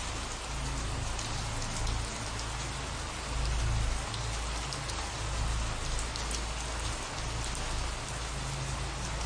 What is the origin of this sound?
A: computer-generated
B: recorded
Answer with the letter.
B